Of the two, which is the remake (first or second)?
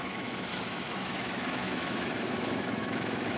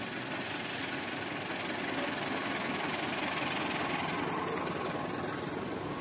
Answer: first